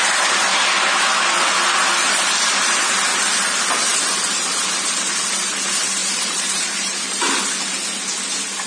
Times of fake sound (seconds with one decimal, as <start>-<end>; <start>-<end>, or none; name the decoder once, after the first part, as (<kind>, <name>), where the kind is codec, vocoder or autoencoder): 6.0-7.2 (vocoder, BigVGAN v2)